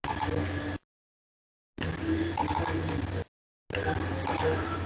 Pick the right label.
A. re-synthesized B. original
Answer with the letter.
B